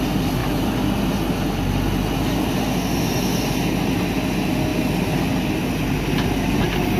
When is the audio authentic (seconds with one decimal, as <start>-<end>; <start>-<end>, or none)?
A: 0.0-7.0

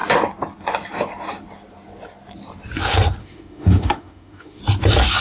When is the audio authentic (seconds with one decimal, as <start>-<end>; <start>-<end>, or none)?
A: 0.0-3.2; 4.6-5.2

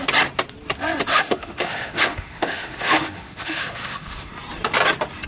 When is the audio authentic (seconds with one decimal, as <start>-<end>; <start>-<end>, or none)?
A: 0.0-1.1; 4.3-5.3

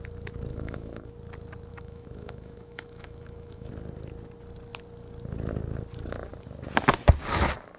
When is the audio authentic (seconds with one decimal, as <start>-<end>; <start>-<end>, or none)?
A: 0.0-0.5; 1.1-1.7; 3.7-7.8